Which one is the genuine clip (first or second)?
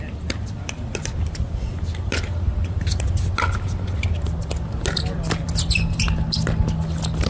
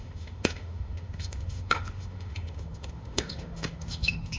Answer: first